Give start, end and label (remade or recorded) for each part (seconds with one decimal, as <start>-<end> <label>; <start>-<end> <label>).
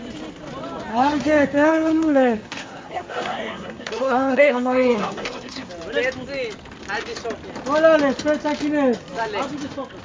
0.0-0.9 recorded; 0.9-5.7 remade; 5.7-10.0 recorded